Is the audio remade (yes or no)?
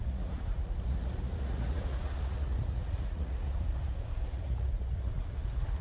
yes